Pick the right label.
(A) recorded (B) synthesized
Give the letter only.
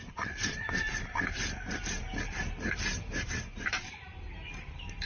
B